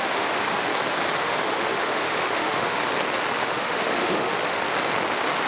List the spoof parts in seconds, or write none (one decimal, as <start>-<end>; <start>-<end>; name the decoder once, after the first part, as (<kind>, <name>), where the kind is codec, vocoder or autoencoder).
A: 0.0-0.7 (autoencoder, DAC-VAE); 1.2-2.8; 3.4-4.6